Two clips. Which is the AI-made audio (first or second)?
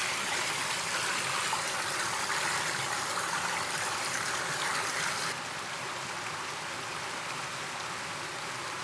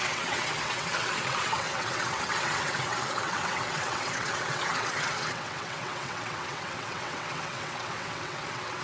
second